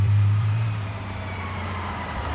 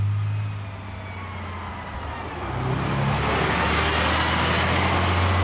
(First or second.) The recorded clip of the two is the second